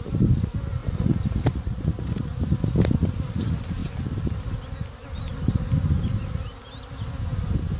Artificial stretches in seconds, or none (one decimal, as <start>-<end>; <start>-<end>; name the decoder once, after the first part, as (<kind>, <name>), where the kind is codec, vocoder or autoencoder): 0.8-2.0 (vocoder, Vocos)

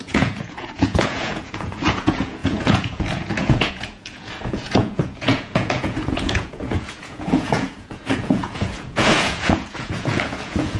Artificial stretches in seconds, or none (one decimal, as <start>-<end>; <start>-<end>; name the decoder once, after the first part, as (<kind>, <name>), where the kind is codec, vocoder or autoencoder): 0.0-10.8 (vocoder, Vocos)

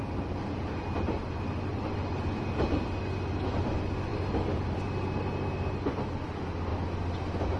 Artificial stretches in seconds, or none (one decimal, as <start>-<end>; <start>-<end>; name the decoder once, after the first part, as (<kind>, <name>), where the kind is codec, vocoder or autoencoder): none